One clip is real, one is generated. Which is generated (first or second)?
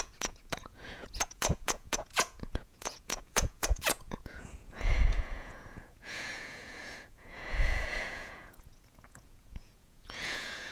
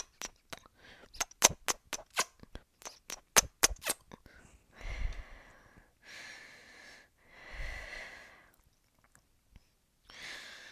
first